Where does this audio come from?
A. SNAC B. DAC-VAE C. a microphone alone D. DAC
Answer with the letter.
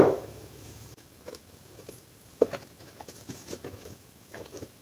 B